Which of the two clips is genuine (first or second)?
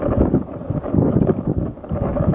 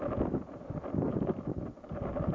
second